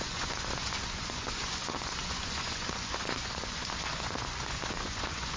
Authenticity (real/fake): fake